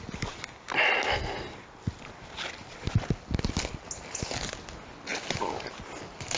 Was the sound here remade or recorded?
recorded